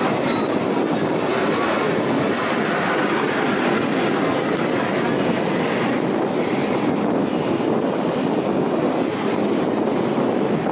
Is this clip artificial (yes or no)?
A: no